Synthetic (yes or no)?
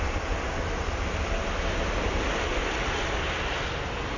no